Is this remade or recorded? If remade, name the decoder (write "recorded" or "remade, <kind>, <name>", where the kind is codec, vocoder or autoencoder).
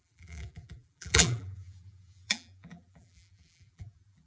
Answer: remade, vocoder, BigVGAN v2